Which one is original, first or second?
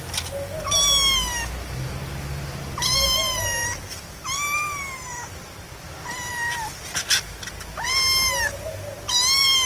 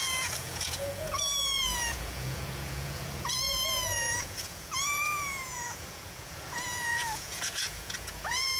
first